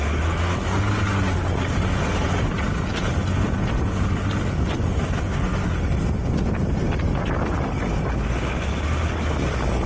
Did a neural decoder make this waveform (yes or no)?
no